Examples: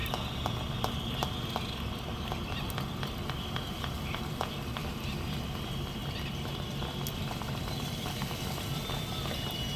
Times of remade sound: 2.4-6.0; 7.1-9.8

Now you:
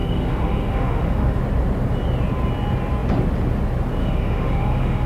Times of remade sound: 0.0-1.4; 4.0-5.1

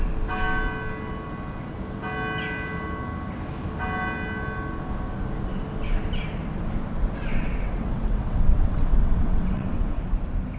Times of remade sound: 7.3-10.0

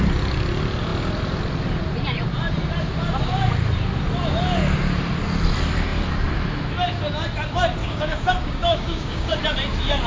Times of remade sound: 7.8-9.4

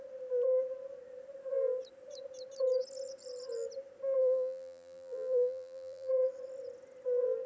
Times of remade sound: 4.2-6.1

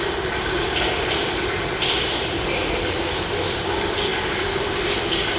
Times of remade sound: none

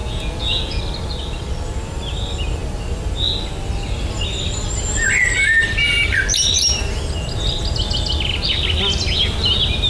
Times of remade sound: 0.0-0.8

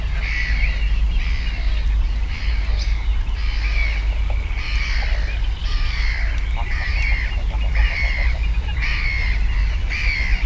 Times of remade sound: none